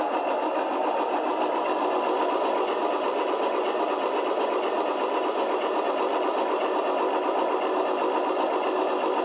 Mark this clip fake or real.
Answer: real